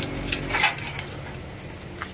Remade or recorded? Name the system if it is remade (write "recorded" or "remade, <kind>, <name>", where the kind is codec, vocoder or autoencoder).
recorded